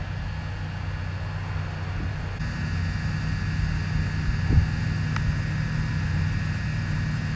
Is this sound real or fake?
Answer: real